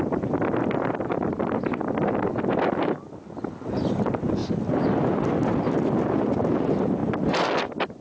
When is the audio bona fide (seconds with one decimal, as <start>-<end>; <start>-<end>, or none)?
0.0-8.0